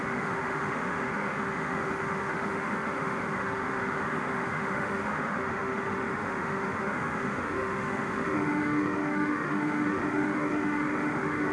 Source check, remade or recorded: remade